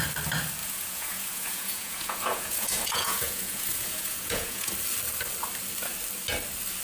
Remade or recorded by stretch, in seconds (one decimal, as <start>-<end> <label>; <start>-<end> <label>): 0.0-0.6 recorded; 0.6-4.7 remade; 4.7-6.8 recorded